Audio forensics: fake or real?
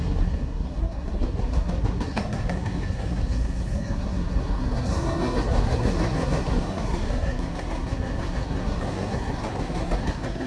fake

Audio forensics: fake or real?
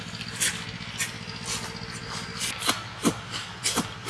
real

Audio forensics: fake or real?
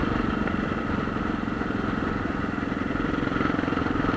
real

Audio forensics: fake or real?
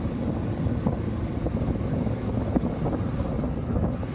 real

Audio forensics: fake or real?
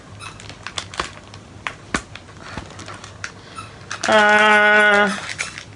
real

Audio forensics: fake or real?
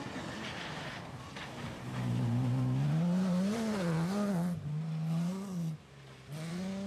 real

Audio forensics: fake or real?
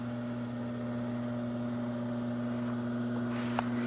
real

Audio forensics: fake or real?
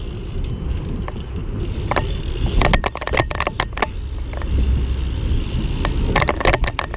real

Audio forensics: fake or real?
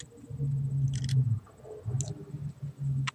real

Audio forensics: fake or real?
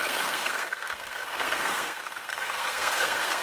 fake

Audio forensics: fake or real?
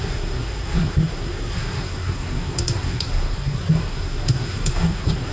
fake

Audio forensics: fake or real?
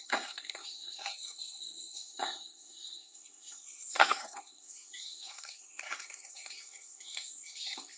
fake